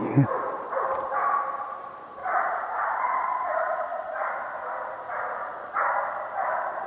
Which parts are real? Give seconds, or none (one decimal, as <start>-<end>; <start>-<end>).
0.0-2.2; 4.3-5.4; 5.9-6.9